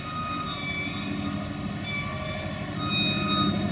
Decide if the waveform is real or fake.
real